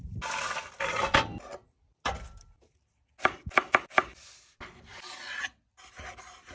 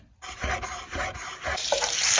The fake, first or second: second